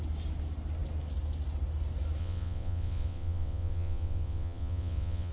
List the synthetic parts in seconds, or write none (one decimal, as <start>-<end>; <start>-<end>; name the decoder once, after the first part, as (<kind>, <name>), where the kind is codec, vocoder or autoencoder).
2.2-5.3 (vocoder, WaveNeXt)